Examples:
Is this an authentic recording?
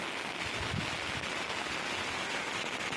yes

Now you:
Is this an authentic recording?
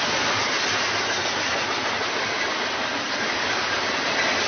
yes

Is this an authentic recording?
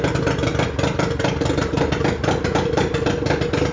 yes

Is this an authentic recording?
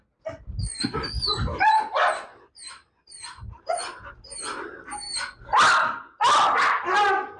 yes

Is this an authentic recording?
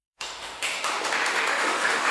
no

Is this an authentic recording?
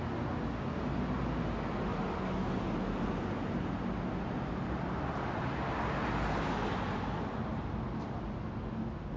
yes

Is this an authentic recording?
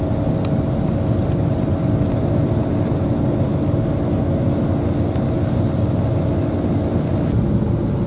yes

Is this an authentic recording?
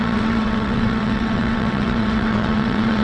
no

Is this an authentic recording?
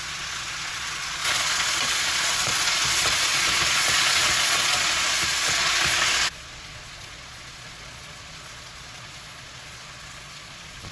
no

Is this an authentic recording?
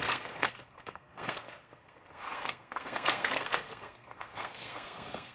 no